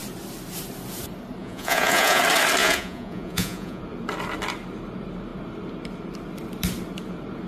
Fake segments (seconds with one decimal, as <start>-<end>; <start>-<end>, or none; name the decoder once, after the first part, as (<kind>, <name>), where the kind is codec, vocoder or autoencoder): 1.4-2.2 (vocoder, Vocos); 2.6-3.8